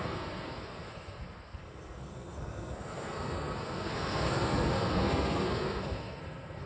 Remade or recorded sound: remade